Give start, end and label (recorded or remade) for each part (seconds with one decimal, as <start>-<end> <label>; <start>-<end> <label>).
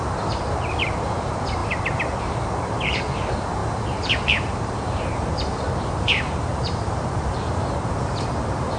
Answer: 0.0-8.8 remade